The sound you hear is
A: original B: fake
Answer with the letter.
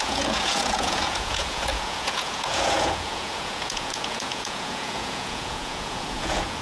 B